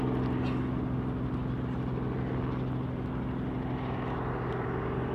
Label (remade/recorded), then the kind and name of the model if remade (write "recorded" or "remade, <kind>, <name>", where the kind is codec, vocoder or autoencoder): recorded